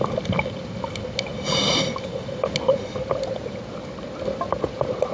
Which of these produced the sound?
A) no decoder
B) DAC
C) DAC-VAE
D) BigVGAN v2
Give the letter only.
A